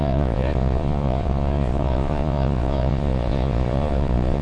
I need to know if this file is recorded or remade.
remade